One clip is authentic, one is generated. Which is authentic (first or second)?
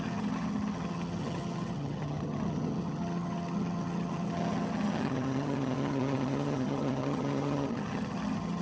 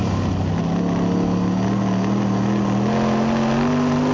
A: second